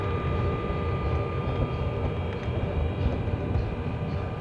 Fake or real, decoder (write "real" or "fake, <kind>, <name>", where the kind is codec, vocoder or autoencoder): real